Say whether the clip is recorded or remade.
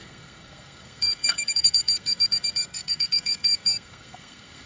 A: remade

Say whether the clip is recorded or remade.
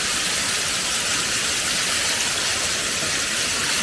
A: recorded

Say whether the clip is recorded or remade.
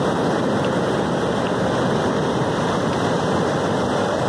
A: recorded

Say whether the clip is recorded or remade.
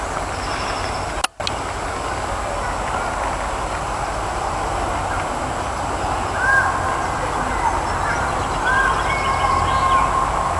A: recorded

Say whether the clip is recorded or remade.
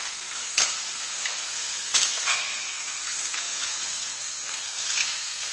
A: remade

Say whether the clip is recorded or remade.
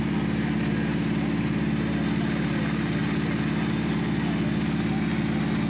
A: recorded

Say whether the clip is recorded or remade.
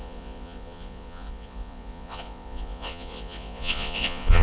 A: remade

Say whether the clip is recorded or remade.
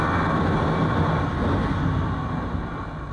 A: recorded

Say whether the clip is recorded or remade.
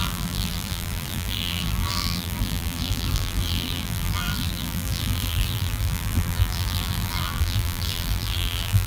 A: remade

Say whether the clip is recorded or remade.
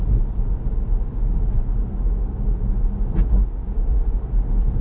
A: recorded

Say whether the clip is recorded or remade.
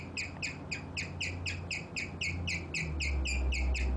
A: recorded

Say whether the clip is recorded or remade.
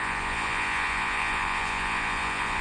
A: remade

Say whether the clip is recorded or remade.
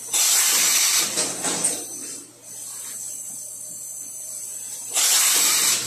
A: recorded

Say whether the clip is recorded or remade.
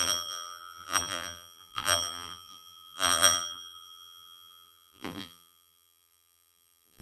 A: remade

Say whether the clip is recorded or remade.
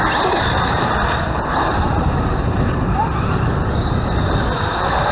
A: remade